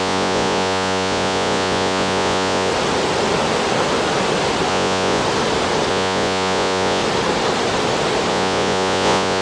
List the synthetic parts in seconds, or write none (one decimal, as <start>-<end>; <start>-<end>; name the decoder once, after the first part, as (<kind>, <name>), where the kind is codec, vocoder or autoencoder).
0.0-2.7 (vocoder, Vocos); 4.7-5.2; 5.9-7.0; 8.3-9.4